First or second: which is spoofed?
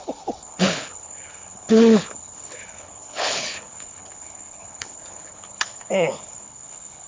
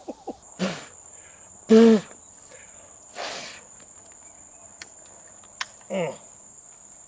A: first